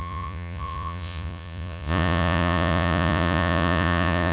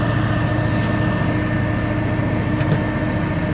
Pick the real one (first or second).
second